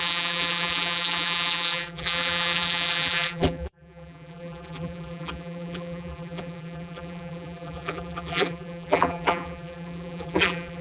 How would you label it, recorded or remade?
remade